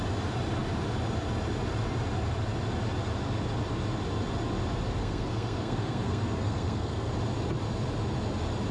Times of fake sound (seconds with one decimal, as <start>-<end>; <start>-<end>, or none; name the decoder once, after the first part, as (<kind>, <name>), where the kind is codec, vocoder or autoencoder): 5.0-7.1 (codec, SNAC)